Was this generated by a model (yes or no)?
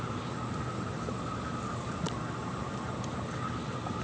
no